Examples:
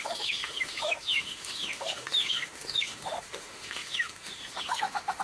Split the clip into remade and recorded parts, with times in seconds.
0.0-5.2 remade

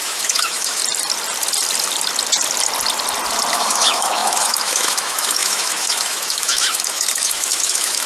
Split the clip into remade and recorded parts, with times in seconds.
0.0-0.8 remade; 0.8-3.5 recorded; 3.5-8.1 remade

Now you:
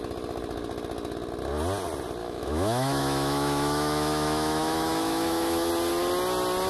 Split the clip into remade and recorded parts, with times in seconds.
0.0-2.2 recorded; 2.2-5.7 remade; 5.7-6.7 recorded

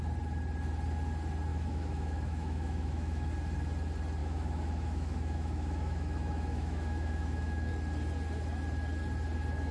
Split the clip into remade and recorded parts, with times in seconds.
0.0-1.5 recorded; 1.5-3.3 remade; 3.3-4.2 recorded; 4.2-7.7 remade; 7.7-9.7 recorded

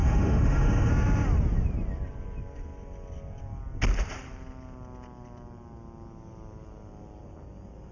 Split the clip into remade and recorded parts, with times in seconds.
0.0-0.9 remade; 0.9-7.9 recorded

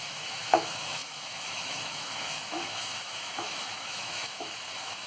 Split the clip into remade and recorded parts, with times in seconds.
0.0-5.1 remade

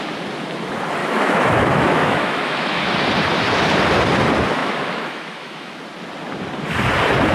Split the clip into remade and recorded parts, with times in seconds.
0.0-1.0 recorded; 1.0-2.9 remade; 2.9-4.6 recorded; 4.6-5.8 remade; 5.8-7.3 recorded